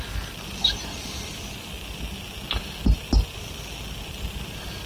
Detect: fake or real real